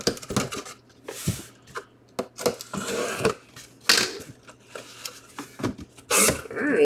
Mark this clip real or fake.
real